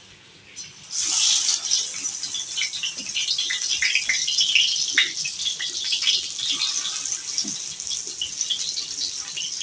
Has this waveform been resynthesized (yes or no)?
no